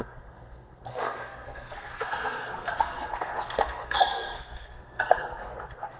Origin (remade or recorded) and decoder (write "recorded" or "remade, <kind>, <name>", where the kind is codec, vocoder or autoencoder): remade, codec, SNAC